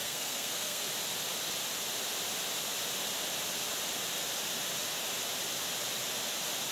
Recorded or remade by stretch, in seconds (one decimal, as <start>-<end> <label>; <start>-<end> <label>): 0.0-0.8 remade; 0.8-6.7 recorded